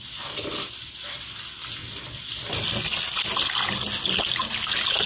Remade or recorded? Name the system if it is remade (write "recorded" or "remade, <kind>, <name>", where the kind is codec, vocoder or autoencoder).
recorded